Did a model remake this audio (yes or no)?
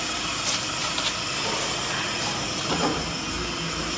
no